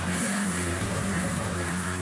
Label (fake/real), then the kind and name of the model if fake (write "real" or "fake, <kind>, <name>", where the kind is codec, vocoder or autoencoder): fake, codec, SNAC